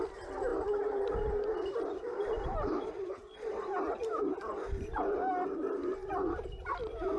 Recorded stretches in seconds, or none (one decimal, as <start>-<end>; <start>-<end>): none